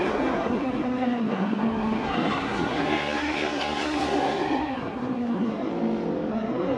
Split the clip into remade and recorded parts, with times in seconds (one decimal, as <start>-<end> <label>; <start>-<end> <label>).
0.0-5.7 remade; 5.7-6.3 recorded; 6.3-6.8 remade